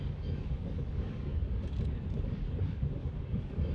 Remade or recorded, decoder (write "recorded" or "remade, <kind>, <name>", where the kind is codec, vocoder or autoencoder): remade, codec, DAC